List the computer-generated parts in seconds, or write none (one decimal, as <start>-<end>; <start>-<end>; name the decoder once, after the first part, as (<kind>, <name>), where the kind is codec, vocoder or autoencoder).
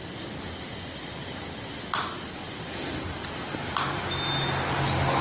none